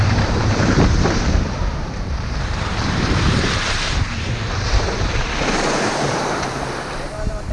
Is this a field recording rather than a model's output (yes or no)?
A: no